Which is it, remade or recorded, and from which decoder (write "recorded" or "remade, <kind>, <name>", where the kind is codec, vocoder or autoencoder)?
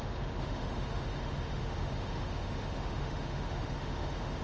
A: remade, autoencoder, DAC-VAE